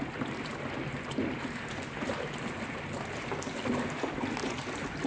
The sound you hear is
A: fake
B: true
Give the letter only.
B